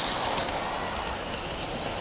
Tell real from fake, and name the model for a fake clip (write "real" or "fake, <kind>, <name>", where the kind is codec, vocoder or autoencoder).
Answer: real